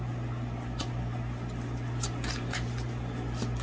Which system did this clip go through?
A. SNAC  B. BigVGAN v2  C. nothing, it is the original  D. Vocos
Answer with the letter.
C